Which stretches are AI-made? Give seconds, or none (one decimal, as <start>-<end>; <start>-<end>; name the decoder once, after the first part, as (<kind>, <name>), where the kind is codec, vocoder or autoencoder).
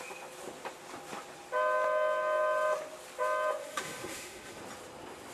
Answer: 3.6-4.6 (autoencoder, DAC-VAE)